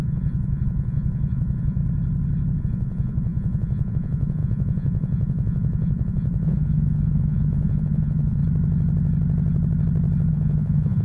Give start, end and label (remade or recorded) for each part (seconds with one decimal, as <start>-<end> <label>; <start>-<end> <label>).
0.0-1.8 remade; 1.8-2.6 recorded; 2.6-8.4 remade; 8.4-10.3 recorded; 10.3-11.0 remade